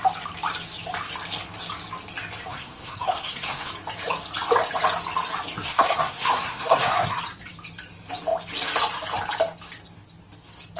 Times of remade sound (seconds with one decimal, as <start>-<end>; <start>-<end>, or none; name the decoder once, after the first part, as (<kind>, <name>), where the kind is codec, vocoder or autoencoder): 2.5-3.7 (codec, SNAC); 5.7-7.2